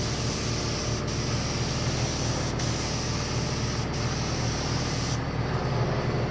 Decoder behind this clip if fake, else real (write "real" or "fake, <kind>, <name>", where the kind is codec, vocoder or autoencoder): real